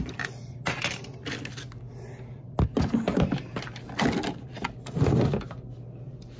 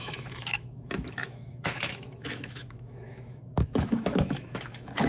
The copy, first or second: second